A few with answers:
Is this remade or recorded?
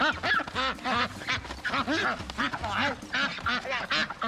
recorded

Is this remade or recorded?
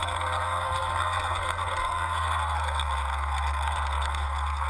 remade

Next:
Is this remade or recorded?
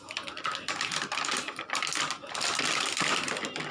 recorded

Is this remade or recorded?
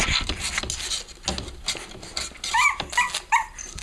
recorded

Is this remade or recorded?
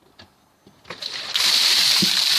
recorded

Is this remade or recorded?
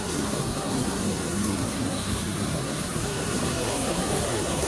remade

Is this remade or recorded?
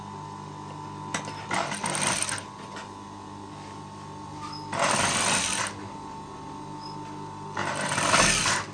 recorded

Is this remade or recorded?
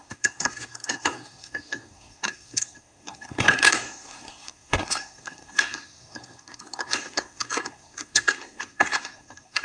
remade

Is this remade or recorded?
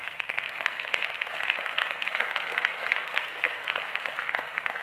remade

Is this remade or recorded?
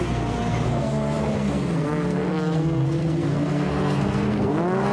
remade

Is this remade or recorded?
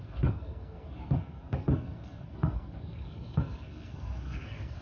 remade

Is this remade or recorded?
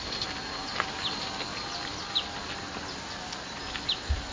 recorded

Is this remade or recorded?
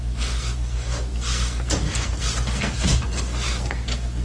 remade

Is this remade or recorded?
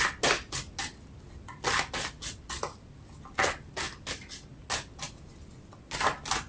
recorded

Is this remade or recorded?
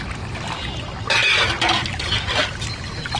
recorded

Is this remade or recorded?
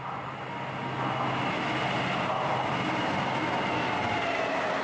recorded